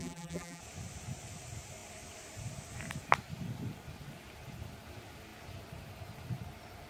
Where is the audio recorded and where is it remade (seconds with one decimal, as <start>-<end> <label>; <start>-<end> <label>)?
0.0-0.6 remade; 0.6-6.9 recorded